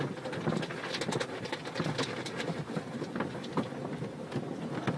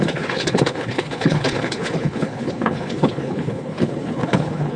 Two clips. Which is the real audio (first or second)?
first